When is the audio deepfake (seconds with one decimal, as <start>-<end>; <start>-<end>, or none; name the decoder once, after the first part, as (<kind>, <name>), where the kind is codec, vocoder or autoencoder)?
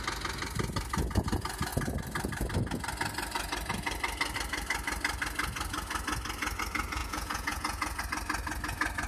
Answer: 7.0-8.0 (vocoder, Vocos)